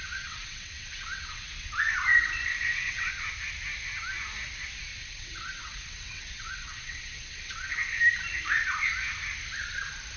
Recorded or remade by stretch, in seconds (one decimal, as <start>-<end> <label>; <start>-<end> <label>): 0.0-1.7 remade; 1.7-2.1 recorded; 2.1-3.1 remade; 3.1-4.9 recorded; 4.9-8.0 remade; 8.0-10.2 recorded